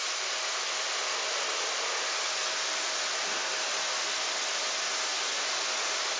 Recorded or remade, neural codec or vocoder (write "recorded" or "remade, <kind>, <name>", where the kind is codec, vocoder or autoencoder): recorded